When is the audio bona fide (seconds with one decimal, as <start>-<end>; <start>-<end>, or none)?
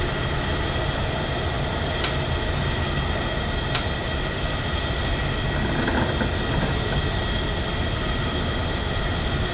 0.0-4.0; 5.0-9.5